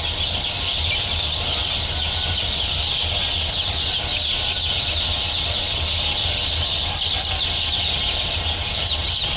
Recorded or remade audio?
recorded